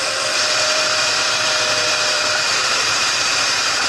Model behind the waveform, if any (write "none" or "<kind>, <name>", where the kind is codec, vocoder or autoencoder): vocoder, BigVGAN v2